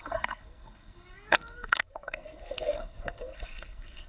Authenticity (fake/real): fake